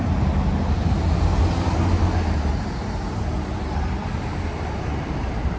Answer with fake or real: real